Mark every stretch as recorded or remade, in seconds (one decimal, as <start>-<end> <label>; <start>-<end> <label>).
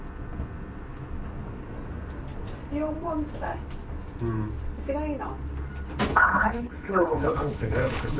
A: 0.0-6.1 recorded; 6.1-8.2 remade